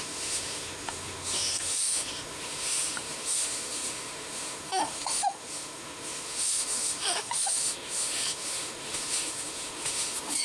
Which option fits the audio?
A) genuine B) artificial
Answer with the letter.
B